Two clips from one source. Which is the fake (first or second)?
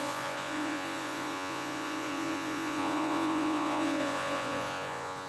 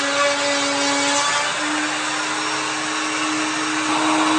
first